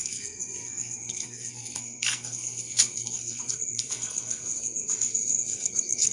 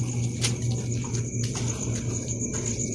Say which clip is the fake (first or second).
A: first